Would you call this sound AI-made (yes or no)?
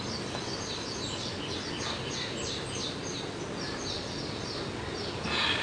no